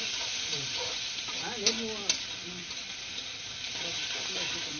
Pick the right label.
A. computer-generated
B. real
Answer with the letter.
B